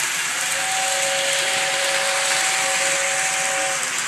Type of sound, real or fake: real